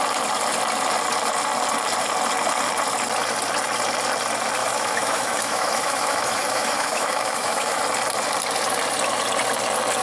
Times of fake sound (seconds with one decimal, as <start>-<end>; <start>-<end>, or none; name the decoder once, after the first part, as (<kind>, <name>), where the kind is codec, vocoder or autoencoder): 4.6-7.8 (autoencoder, DAC-VAE)

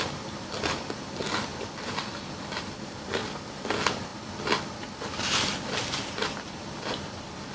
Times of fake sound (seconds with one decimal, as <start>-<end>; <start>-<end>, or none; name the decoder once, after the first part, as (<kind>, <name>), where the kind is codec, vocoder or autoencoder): none

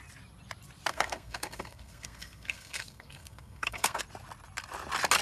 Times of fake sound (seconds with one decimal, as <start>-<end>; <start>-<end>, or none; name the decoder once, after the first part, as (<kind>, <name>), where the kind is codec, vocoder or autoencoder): 0.9-4.0 (codec, SNAC)

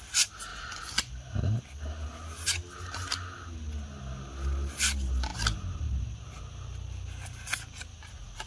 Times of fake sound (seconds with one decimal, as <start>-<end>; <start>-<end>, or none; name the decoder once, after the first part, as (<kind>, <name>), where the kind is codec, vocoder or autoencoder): 0.5-1.1 (vocoder, Vocos)

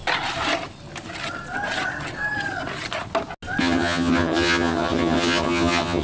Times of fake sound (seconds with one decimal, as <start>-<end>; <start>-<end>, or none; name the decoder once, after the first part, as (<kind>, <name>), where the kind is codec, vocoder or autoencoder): 3.6-6.0 (vocoder, HiFi-GAN)

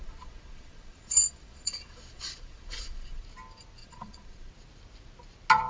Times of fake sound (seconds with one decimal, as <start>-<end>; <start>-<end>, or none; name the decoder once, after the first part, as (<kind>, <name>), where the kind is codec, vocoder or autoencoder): 0.0-3.2 (vocoder, Vocos); 3.8-4.5

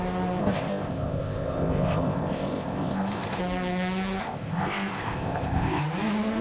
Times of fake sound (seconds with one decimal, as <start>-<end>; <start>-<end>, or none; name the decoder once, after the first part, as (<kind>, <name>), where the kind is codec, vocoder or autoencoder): 0.4-3.4 (codec, ZipCodec); 4.2-5.8